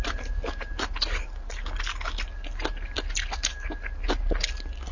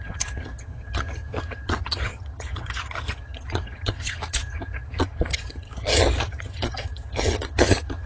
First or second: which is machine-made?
second